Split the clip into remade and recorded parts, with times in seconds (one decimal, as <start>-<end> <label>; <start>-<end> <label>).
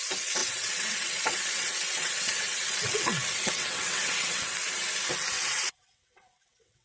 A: 0.0-4.4 remade; 4.4-5.3 recorded; 5.3-6.8 remade